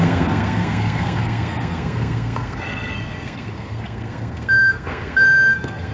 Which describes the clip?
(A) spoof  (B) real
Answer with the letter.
A